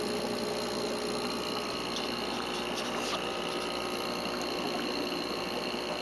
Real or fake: real